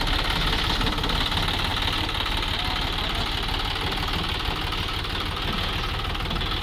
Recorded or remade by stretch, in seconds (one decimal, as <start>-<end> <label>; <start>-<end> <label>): 0.0-6.6 recorded